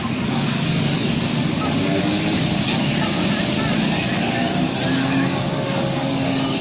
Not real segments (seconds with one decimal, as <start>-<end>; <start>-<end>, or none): 0.0-3.2; 3.8-6.6